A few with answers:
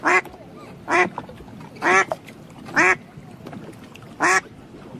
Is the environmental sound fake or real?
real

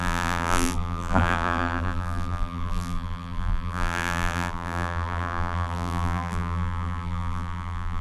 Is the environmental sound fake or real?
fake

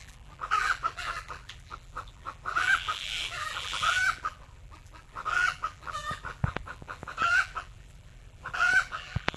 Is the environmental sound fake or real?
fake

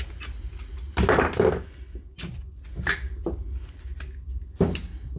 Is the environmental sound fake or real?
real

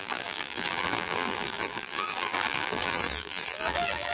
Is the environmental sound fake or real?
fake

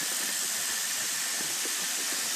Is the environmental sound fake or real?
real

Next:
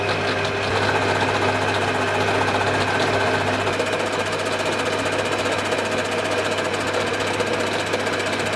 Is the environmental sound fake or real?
real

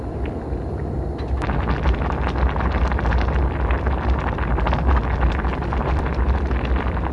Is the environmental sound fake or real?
real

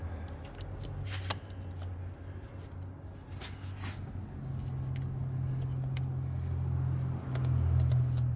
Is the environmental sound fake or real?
real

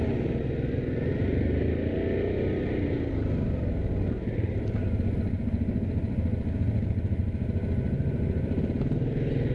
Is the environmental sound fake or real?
real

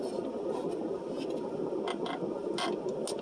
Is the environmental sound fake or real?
real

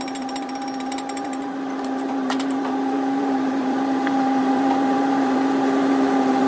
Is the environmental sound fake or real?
fake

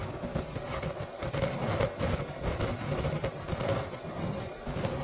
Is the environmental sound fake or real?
real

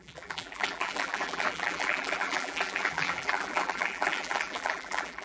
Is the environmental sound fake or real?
fake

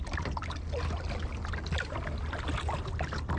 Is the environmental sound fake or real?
real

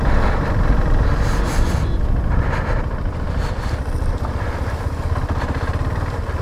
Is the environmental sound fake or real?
fake